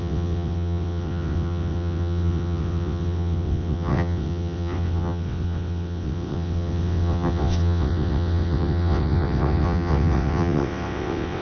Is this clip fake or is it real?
fake